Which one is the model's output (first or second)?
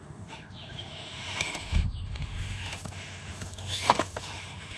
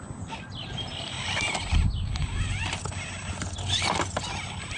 first